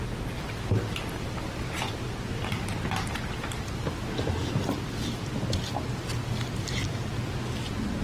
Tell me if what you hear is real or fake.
real